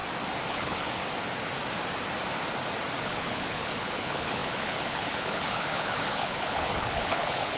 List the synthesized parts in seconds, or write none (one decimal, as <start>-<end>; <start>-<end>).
0.5-1.0; 3.0-7.6